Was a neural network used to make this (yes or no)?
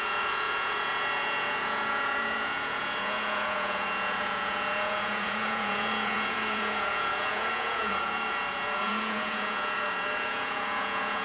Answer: yes